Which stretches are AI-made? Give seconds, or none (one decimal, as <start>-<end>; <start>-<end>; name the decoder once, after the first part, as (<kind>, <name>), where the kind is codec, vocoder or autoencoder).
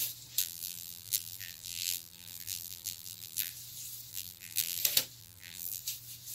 0.4-3.5 (vocoder, BigVGAN v2); 4.1-4.8; 5.2-5.8